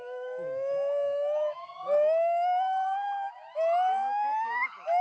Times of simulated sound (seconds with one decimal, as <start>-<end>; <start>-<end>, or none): 0.0-5.0